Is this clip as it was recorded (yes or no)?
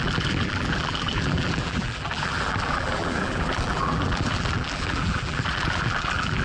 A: no